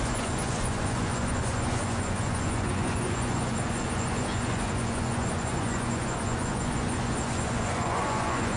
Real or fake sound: fake